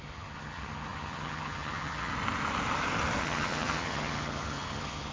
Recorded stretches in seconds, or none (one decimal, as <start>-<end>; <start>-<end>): 2.1-3.2